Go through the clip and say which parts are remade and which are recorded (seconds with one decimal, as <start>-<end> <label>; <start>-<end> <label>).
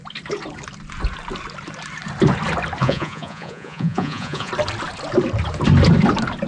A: 0.0-2.8 recorded; 2.8-4.5 remade; 4.5-6.5 recorded